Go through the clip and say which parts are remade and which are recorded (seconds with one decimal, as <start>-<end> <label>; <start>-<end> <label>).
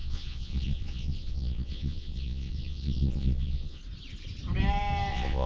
0.0-3.8 remade; 3.8-5.1 recorded; 5.1-5.5 remade